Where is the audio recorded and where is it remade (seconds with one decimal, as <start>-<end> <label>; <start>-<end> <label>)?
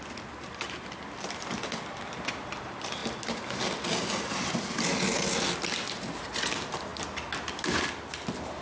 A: 0.0-8.6 recorded